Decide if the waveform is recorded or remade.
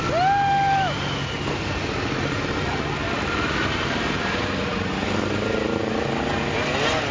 recorded